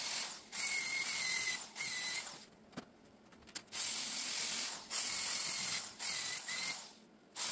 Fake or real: real